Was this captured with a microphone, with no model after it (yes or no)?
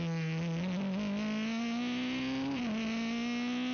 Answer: yes